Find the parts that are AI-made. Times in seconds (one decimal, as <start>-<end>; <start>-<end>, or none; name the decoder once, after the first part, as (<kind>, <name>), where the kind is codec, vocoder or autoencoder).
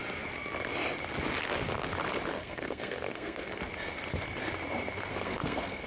2.3-3.6 (codec, SNAC); 5.1-5.9